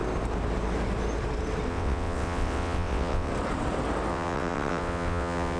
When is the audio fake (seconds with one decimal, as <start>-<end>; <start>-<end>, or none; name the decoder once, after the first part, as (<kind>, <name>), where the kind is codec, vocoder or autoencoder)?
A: 1.7-3.3 (vocoder, WaveNeXt); 4.1-5.6